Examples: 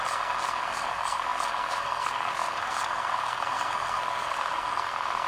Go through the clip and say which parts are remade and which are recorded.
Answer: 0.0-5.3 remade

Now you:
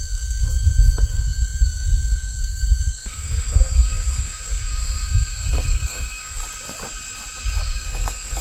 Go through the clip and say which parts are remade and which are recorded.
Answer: 0.0-6.4 remade; 6.4-7.6 recorded; 7.6-8.4 remade

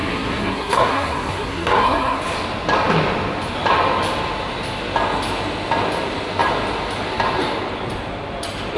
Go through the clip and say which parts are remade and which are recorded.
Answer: 0.0-2.2 remade; 2.2-8.8 recorded

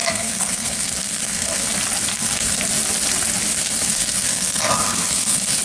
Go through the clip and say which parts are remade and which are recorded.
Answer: 0.0-1.7 remade; 1.7-2.1 recorded; 2.1-2.6 remade; 2.6-3.5 recorded; 3.5-5.6 remade